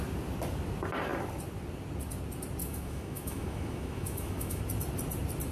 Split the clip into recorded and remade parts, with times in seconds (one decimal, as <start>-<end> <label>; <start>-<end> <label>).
0.0-2.6 recorded; 2.6-4.6 remade; 4.6-5.5 recorded